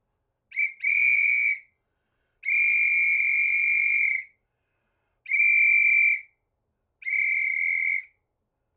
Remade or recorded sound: recorded